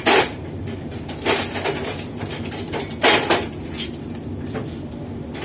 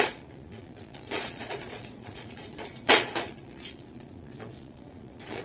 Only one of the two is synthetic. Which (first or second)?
second